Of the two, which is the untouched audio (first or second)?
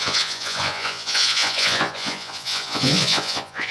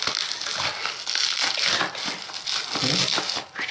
second